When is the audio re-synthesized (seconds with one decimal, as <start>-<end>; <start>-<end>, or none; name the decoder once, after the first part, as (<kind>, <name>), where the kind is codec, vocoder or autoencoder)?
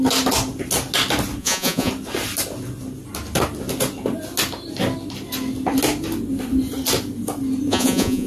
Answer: 1.4-1.9 (vocoder, Vocos); 7.7-8.3